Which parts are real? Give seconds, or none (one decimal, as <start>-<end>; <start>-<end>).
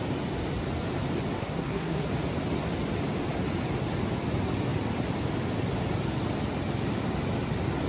0.0-1.4; 2.1-7.9